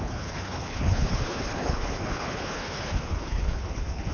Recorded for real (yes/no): no